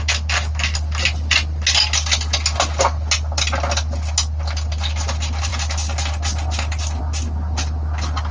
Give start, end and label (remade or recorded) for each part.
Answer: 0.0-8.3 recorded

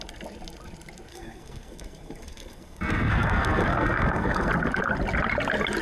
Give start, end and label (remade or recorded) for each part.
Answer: 0.0-1.1 recorded; 1.1-4.5 remade; 4.5-5.8 recorded

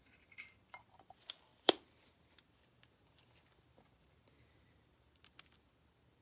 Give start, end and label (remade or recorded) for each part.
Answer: 0.0-1.5 recorded; 1.5-2.3 remade; 2.3-6.2 recorded

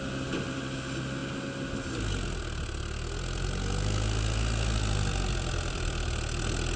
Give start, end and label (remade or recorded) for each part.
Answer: 0.0-6.8 recorded

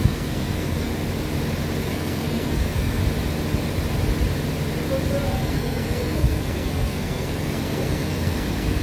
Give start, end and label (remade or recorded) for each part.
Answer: 0.0-0.9 remade; 0.9-1.8 recorded; 1.8-3.0 remade; 3.0-5.3 recorded; 5.3-8.8 remade

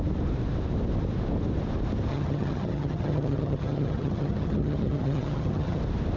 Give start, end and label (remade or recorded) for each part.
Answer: 0.0-2.1 recorded; 2.1-5.8 remade; 5.8-6.2 recorded